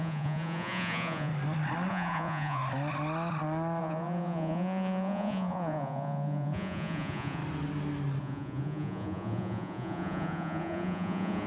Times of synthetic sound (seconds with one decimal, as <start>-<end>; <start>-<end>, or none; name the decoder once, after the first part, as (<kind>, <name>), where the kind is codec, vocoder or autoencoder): 0.0-1.3 (vocoder, Vocos); 1.9-2.6; 3.8-7.4; 8.2-11.5